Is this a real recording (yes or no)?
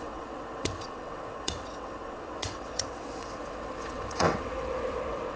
no